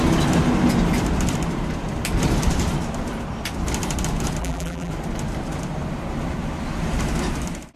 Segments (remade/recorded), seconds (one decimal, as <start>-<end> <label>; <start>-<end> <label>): 0.0-4.4 recorded; 4.4-4.9 remade; 4.9-7.8 recorded